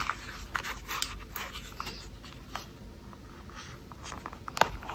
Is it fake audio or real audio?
real